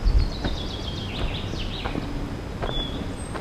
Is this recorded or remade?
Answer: recorded